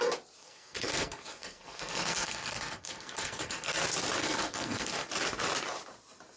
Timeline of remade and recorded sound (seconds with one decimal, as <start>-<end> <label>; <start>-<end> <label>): 0.0-0.4 recorded; 0.4-3.8 remade; 3.8-4.2 recorded; 4.2-5.1 remade; 5.1-6.4 recorded